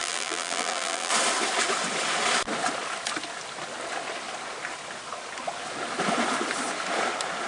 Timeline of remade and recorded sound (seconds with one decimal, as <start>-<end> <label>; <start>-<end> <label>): 0.0-1.1 remade; 1.1-7.5 recorded